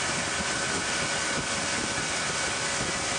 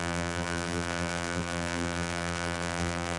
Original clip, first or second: first